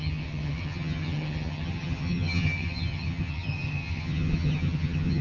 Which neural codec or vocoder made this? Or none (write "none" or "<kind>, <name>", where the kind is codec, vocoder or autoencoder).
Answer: vocoder, HiFi-GAN